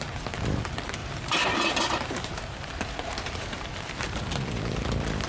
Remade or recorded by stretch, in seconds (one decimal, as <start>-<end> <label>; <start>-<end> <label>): 0.0-1.0 recorded; 1.0-4.2 remade; 4.2-5.3 recorded